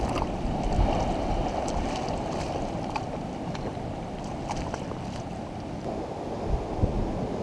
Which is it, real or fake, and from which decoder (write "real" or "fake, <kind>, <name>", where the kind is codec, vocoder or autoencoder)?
real